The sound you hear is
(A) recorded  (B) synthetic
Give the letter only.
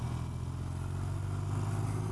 A